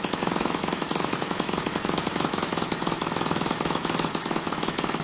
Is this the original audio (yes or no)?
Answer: no